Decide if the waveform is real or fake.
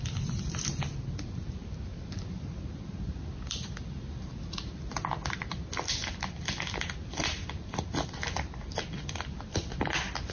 fake